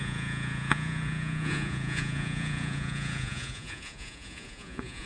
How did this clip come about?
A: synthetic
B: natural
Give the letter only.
A